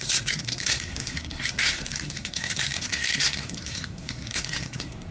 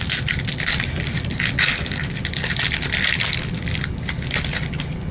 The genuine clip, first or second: second